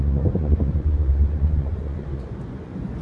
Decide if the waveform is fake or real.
fake